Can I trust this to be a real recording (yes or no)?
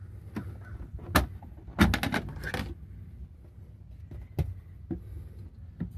yes